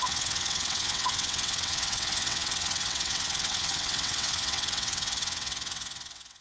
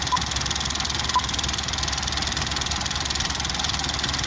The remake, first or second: first